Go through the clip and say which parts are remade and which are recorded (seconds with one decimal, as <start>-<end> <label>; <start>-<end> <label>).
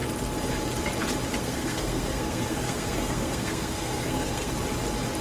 0.0-1.4 recorded; 1.4-4.5 remade; 4.5-5.2 recorded